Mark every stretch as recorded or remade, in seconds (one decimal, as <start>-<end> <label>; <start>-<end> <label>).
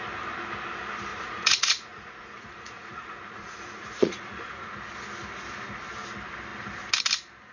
0.0-1.1 recorded; 1.1-4.7 remade; 4.7-7.5 recorded